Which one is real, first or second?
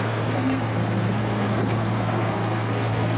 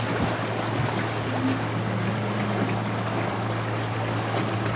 second